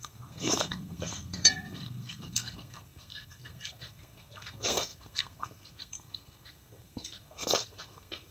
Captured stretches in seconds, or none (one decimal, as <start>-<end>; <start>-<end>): none